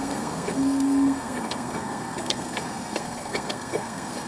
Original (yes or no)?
no